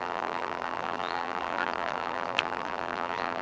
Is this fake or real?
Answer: fake